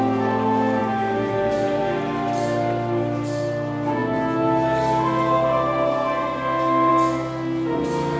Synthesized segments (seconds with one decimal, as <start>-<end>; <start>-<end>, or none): none